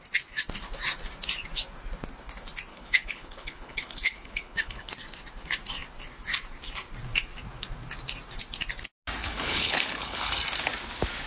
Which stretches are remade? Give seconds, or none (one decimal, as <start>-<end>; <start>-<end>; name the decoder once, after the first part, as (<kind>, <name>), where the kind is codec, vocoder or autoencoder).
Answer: 2.7-4.9 (codec, HILCodec); 9.2-10.3